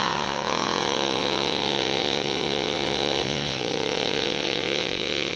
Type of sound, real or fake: fake